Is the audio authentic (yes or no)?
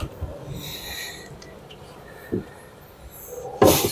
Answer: yes